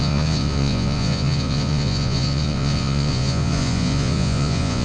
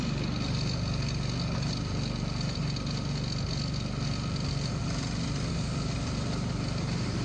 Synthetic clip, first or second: first